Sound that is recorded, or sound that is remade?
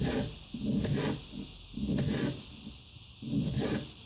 recorded